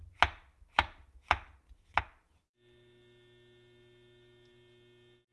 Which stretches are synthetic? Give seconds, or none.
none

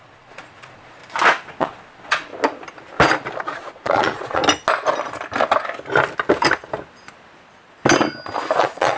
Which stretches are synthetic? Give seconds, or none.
0.0-1.0 (vocoder, Vocos); 1.6-2.3; 3.4-4.4; 8.6-9.0